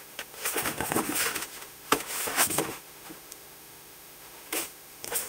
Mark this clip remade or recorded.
remade